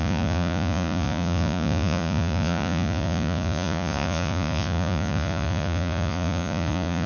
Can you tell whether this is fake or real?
fake